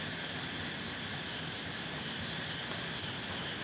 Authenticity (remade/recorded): recorded